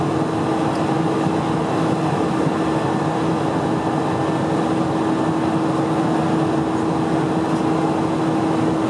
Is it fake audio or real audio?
real